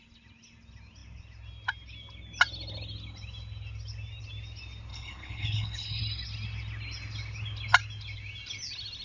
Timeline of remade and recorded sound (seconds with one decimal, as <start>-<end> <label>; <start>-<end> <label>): 0.0-4.9 recorded; 4.9-6.0 remade; 6.0-9.0 recorded